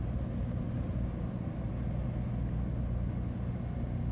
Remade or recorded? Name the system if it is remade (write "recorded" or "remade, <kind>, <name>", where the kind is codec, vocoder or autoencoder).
recorded